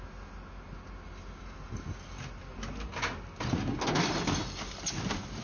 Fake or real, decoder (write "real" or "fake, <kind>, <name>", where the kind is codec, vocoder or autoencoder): real